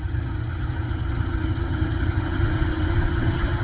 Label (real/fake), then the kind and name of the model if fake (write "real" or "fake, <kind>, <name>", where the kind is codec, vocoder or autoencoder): fake, vocoder, HiFi-GAN